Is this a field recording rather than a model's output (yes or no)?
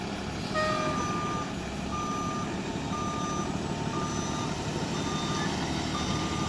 yes